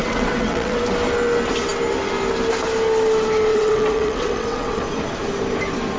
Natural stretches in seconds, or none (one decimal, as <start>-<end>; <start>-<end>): 0.8-3.5; 4.8-6.0